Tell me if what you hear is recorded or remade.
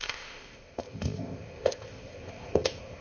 remade